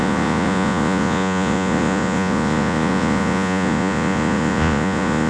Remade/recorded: remade